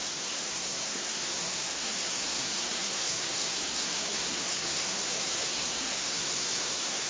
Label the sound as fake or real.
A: fake